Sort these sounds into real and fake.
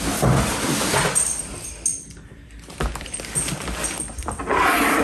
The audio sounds real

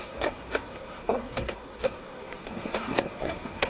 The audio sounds fake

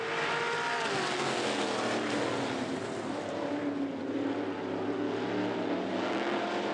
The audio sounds real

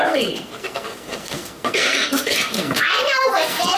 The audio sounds fake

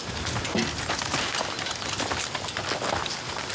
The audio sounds real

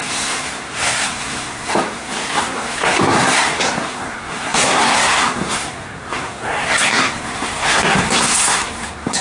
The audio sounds fake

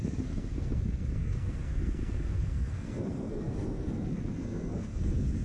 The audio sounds fake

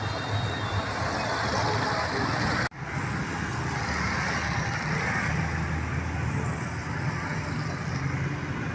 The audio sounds real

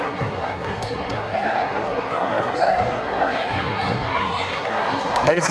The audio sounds fake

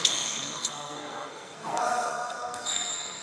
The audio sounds fake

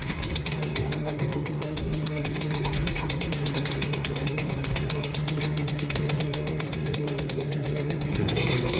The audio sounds fake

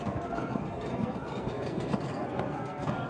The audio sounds fake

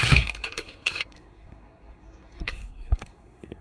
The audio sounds fake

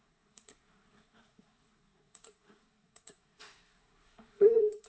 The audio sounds fake